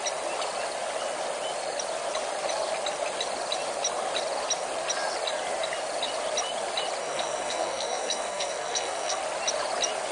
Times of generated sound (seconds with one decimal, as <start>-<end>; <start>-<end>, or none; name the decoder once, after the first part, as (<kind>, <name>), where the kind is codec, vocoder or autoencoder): 7.0-9.2 (codec, SNAC)